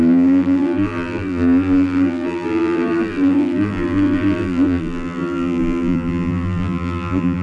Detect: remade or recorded remade